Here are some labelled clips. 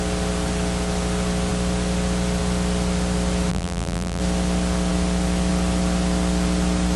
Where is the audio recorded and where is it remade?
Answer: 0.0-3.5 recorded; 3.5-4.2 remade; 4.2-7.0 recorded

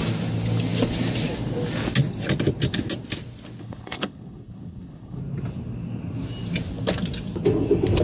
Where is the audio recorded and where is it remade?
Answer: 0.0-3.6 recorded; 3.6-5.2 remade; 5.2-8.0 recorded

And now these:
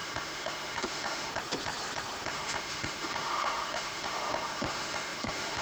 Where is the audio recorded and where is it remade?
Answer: 0.0-1.3 remade; 1.3-2.3 recorded; 2.3-5.6 remade

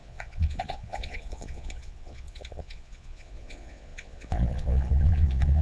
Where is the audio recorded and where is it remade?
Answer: 0.0-5.6 remade

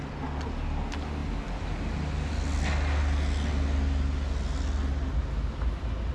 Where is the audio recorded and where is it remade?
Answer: 0.0-6.1 recorded